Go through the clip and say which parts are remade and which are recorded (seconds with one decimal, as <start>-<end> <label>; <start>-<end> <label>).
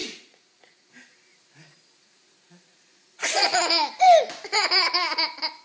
0.0-0.9 remade; 0.9-1.3 recorded; 1.3-3.7 remade; 3.7-5.6 recorded